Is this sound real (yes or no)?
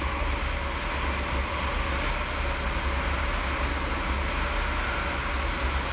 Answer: yes